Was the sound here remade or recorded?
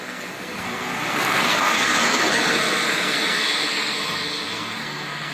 remade